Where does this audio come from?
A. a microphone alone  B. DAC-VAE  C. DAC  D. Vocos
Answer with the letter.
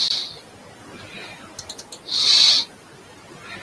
A